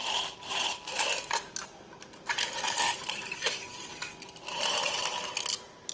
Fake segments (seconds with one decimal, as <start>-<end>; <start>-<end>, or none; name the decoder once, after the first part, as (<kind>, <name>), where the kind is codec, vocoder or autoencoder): 2.2-3.9 (vocoder, BigVGAN v2); 4.6-5.9